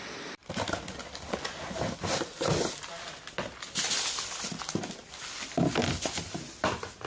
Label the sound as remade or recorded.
recorded